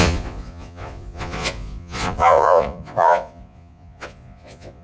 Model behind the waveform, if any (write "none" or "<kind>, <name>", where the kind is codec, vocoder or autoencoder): vocoder, Vocos